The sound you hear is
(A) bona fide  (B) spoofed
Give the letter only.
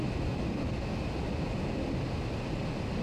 A